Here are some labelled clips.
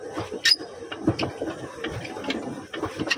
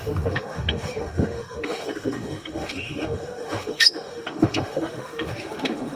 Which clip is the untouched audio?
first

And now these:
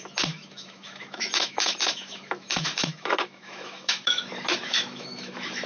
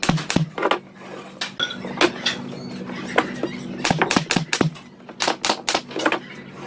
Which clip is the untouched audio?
second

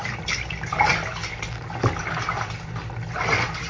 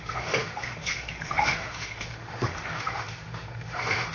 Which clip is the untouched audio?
first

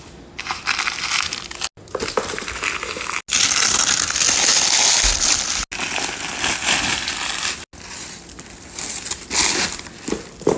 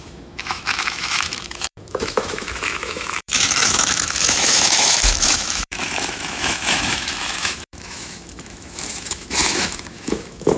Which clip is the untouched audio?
first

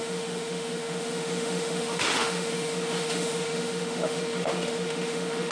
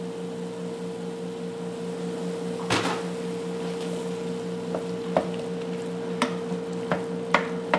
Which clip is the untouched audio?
second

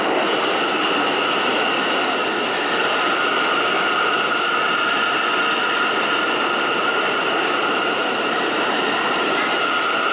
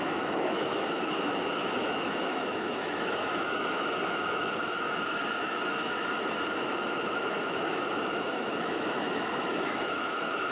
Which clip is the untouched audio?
first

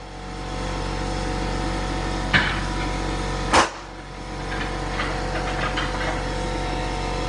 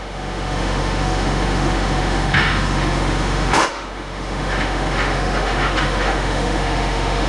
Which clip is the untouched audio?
first